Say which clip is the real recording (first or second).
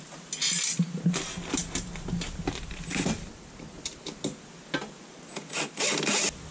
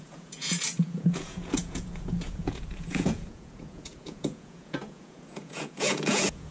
first